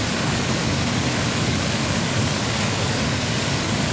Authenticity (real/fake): fake